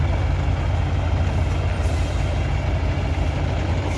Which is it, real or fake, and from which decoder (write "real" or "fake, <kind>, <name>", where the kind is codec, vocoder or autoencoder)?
real